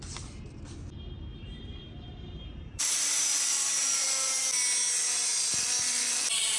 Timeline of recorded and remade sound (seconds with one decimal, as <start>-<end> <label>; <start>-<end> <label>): 0.0-1.3 recorded; 1.3-4.1 remade; 4.1-6.6 recorded